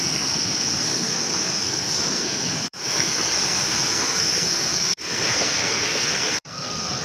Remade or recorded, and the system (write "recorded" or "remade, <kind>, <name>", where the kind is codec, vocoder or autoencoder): remade, codec, SNAC